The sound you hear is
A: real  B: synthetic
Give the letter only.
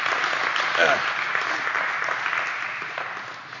A